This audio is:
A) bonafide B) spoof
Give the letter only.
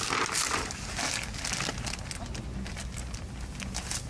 A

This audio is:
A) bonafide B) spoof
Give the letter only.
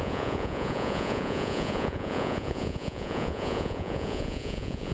B